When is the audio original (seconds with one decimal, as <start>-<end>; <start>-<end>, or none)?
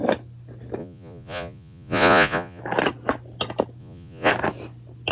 0.0-0.8; 2.6-3.8; 4.3-5.1